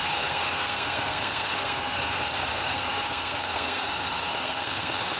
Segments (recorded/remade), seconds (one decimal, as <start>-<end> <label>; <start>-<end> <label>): 0.0-5.2 remade